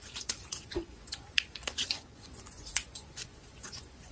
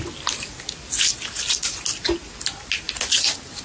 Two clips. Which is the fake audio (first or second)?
first